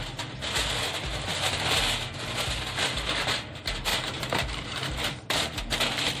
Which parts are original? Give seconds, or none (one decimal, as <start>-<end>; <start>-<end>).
0.0-3.9; 5.0-6.2

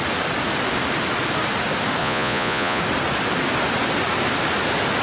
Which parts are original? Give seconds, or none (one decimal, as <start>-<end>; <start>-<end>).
0.0-2.0; 2.8-5.0

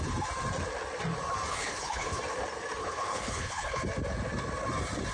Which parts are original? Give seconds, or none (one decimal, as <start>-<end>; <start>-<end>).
0.0-1.5; 2.2-2.8; 3.8-5.1

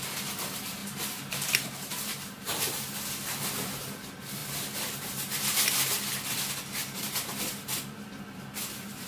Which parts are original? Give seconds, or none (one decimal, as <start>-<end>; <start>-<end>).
0.0-0.8; 3.5-9.1

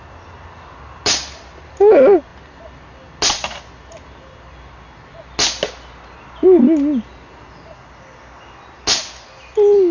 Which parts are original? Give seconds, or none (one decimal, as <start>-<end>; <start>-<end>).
0.0-9.9